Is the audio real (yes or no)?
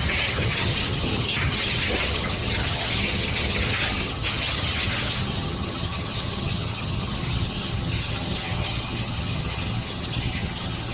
no